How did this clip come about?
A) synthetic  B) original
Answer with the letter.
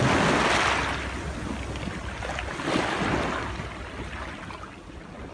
B